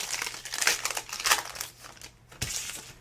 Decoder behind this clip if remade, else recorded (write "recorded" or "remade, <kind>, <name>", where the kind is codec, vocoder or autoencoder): recorded